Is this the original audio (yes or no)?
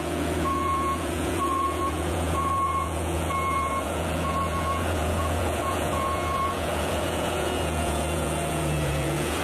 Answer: no